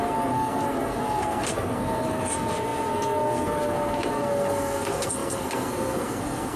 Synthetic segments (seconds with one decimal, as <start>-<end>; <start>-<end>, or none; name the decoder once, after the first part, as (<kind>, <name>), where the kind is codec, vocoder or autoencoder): 0.0-6.6 (codec, SNAC)